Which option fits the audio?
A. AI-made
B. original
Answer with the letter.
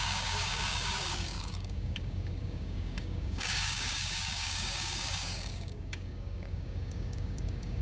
A